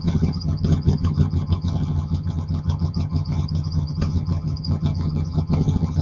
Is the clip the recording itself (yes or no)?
no